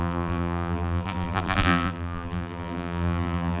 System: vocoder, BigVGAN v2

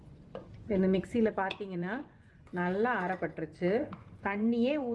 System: vocoder, Vocos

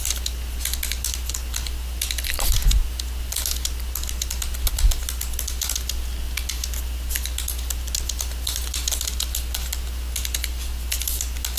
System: none